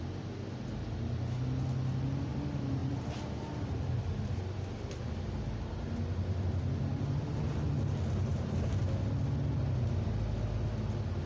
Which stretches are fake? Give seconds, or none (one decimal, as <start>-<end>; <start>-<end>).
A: 2.8-5.9; 8.3-8.8